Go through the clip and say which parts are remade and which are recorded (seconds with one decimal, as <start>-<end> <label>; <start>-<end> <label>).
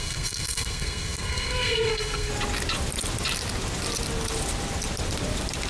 0.0-2.3 remade; 2.3-5.7 recorded